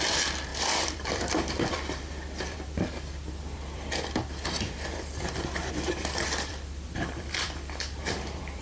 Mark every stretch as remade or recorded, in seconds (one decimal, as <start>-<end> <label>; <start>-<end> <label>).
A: 0.0-8.6 remade